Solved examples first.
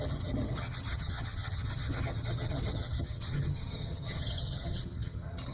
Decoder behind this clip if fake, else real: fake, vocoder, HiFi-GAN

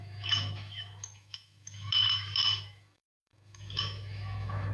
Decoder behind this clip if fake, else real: fake, autoencoder, DAC-VAE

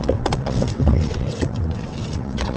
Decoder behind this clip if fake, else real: fake, vocoder, WaveNeXt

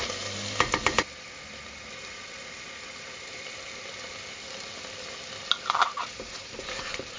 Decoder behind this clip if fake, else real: real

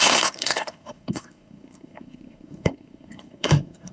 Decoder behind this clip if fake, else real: fake, codec, SNAC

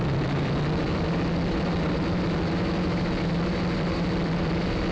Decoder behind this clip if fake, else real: fake, vocoder, BigVGAN v2